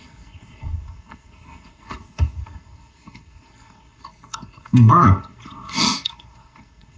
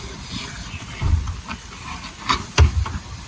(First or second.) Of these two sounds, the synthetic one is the first